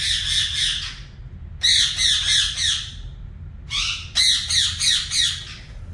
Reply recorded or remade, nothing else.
recorded